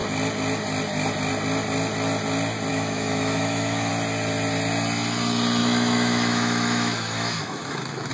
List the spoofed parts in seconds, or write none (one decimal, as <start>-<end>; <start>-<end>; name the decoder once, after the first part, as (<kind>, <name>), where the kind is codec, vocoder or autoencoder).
2.7-3.9 (autoencoder, DAC-VAE); 5.6-8.1